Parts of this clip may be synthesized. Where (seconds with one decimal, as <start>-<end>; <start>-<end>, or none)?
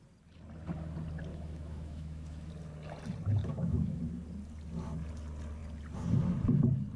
1.3-2.5; 3.4-4.0